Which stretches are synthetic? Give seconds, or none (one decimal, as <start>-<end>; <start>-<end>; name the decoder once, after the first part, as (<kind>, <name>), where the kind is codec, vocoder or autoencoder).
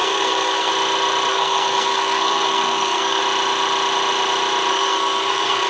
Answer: 0.0-0.7 (codec, SNAC); 1.3-3.2; 4.7-5.7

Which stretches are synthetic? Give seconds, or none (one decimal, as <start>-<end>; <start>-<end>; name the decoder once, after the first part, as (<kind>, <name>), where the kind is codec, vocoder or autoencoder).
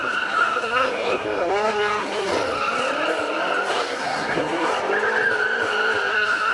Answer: 0.0-2.3 (codec, SNAC); 3.7-4.7; 6.1-6.5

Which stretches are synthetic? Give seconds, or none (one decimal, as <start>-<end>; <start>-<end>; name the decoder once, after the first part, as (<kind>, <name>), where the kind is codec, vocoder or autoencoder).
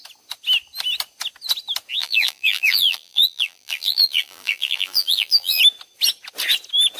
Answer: 2.0-5.6 (vocoder, BigVGAN v2)